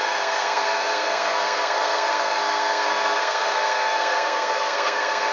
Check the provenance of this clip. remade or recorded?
remade